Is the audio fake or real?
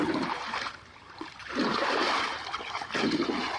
real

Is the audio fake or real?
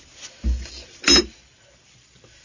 real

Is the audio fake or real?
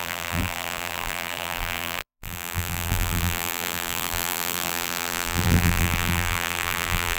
fake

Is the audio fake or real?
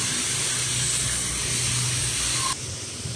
real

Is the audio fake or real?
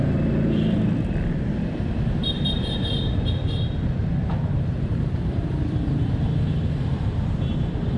fake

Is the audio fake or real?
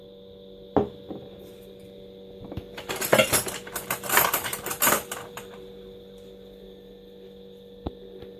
fake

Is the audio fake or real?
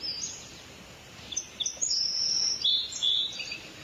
fake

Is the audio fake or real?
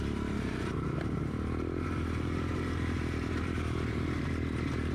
fake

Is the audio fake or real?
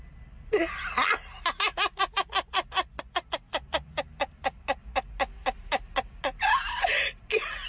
real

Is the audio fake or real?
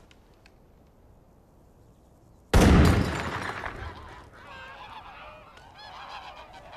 real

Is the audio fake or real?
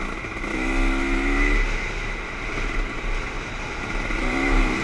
real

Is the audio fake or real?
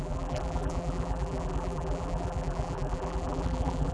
fake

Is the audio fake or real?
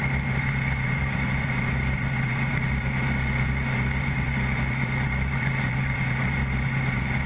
fake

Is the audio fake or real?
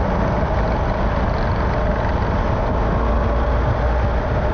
real